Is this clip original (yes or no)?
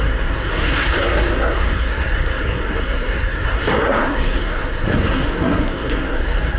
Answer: no